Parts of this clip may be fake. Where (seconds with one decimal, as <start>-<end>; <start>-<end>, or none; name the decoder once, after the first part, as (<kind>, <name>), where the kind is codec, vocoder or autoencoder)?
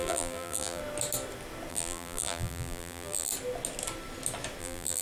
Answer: 0.0-0.8 (vocoder, BigVGAN v2); 1.7-3.3; 4.6-5.0